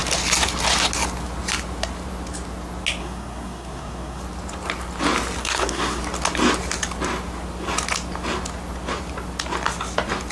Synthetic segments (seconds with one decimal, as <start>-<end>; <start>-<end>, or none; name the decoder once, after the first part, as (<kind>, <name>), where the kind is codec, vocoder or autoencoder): 3.0-4.2 (codec, SNAC); 5.4-6.0

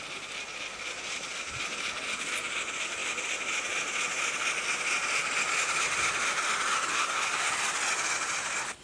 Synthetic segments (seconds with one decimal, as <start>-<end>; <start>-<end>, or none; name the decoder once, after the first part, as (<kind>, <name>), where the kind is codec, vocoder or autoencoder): 6.9-7.5 (codec, SNAC)

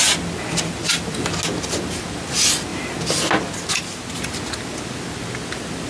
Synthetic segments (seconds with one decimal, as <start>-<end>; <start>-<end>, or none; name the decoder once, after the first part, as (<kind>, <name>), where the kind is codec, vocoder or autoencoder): none

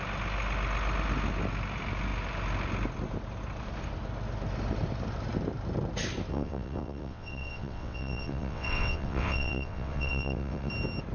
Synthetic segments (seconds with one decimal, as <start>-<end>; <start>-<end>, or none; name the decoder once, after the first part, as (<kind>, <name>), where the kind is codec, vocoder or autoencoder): 6.3-10.7 (vocoder, WaveNeXt)

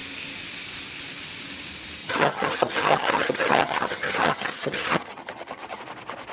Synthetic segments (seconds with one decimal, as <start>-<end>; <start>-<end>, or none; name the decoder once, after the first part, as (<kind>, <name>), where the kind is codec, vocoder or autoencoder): 2.0-5.8 (vocoder, HiFi-GAN)

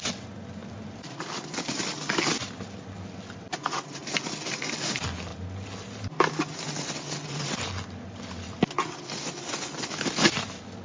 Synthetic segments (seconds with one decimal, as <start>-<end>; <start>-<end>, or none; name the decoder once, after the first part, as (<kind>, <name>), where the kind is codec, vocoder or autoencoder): 0.6-1.8 (vocoder, BigVGAN v2); 4.0-4.6

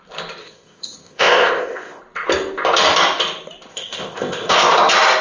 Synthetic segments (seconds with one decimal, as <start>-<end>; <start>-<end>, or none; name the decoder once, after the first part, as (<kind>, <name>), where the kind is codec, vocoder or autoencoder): 0.4-2.0 (codec, ZipCodec); 3.7-4.7

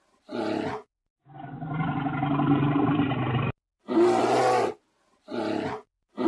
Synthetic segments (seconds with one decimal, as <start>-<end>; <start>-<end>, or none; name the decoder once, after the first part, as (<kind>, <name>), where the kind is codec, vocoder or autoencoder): none